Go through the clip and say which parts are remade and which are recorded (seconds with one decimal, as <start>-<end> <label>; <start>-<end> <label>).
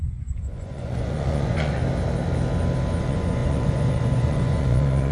0.0-1.8 remade; 1.8-3.0 recorded; 3.0-5.1 remade